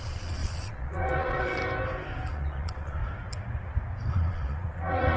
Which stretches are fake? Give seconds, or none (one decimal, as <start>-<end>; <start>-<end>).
0.0-1.6; 2.3-3.0; 4.1-5.2